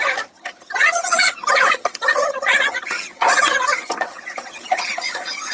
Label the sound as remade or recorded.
remade